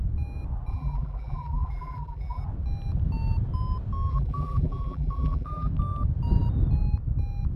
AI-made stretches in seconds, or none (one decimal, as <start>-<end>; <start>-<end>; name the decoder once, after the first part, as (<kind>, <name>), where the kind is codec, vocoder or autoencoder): 0.7-2.4 (vocoder, BigVGAN v2); 4.1-5.7

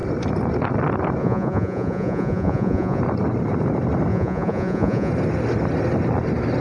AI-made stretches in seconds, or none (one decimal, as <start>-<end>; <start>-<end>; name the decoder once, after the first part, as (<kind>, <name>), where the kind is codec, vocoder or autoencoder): 1.2-3.0 (vocoder, Vocos); 4.1-5.1

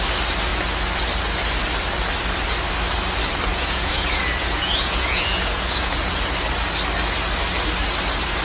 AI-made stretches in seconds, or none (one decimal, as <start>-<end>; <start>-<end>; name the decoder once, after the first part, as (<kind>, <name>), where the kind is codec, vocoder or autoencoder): 3.5-6.1 (vocoder, Vocos)

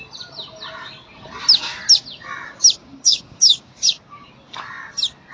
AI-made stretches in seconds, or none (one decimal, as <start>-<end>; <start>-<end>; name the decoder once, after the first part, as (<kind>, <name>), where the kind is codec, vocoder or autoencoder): 2.8-4.3 (codec, DAC)

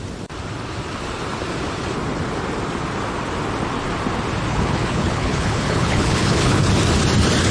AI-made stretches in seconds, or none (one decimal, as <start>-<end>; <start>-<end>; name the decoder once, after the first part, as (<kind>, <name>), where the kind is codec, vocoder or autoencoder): 4.5-6.6 (codec, HILCodec)

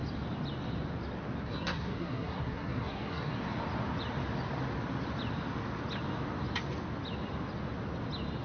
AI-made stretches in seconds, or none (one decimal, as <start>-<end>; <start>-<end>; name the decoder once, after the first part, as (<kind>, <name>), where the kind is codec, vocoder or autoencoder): 1.4-3.4 (codec, SNAC)